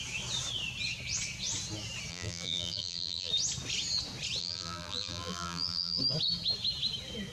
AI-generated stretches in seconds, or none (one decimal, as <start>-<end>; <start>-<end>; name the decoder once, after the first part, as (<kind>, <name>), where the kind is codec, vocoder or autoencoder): 2.1-3.3 (vocoder, BigVGAN v2); 4.4-6.0